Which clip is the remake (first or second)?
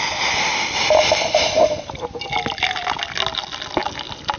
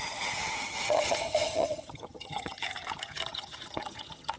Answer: second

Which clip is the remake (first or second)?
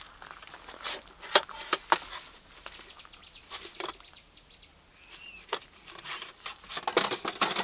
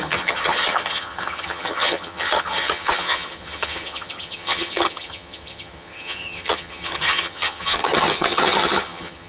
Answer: second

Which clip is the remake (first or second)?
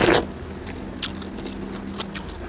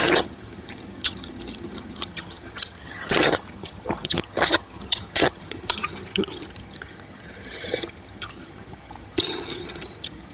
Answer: second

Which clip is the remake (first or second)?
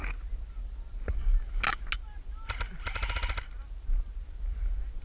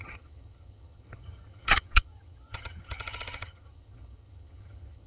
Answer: second